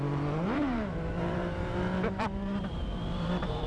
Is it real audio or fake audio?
fake